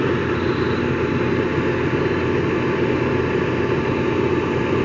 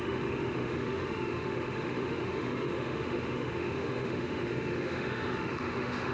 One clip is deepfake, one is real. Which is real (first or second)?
first